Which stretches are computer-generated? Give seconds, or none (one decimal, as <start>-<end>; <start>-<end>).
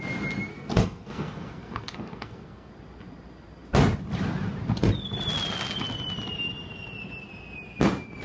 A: 0.5-2.7